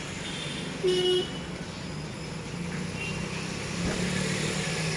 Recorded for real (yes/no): yes